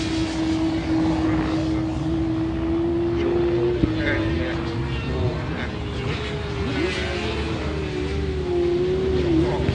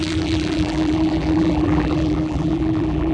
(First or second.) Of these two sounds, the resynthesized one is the second